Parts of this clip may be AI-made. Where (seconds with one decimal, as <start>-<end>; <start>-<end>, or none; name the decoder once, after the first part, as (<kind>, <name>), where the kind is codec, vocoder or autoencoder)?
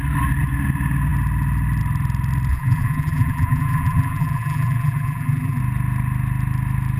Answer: 2.5-5.6 (vocoder, BigVGAN v2)